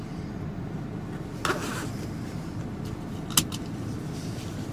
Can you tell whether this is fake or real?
real